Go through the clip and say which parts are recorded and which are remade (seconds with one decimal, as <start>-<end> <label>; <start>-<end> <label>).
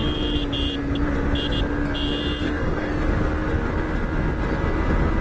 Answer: 0.0-2.4 recorded; 2.4-2.9 remade; 2.9-5.2 recorded